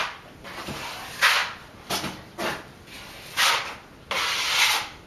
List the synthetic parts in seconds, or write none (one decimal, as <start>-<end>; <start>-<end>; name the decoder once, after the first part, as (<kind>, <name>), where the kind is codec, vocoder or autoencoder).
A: none